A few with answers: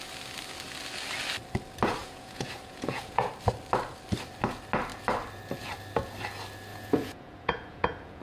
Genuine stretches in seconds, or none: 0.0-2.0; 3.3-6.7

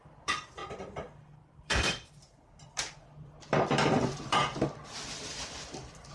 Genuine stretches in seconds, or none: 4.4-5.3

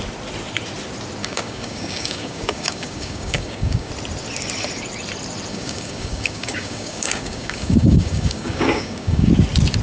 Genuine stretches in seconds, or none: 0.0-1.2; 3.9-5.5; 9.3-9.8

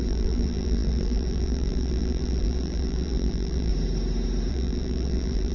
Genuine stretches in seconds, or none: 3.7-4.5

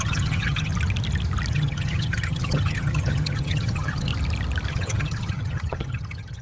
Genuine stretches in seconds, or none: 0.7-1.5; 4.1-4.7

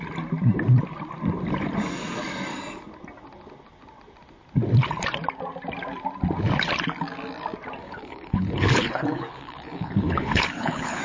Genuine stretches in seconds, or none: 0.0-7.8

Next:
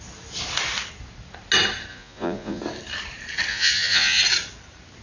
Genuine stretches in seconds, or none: 0.0-1.9; 2.6-3.5; 4.2-5.0